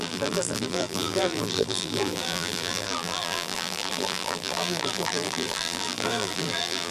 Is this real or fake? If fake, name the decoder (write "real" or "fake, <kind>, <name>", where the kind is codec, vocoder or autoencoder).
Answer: fake, vocoder, BigVGAN v2